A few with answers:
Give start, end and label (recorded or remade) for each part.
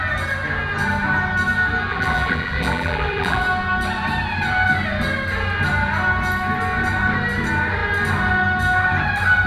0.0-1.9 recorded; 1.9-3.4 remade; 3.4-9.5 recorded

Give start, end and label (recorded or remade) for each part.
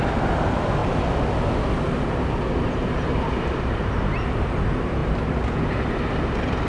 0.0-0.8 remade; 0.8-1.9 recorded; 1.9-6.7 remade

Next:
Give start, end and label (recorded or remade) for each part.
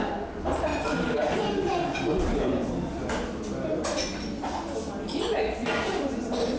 0.0-0.7 recorded; 0.7-1.3 remade; 1.3-2.1 recorded; 2.1-3.0 remade; 3.0-5.6 recorded; 5.6-6.6 remade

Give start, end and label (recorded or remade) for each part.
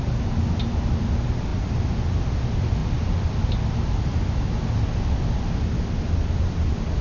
0.0-7.0 recorded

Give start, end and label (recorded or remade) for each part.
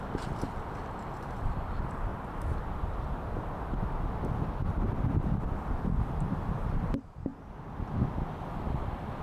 0.0-2.1 remade; 2.1-6.7 recorded; 6.7-7.3 remade; 7.3-8.5 recorded; 8.5-9.2 remade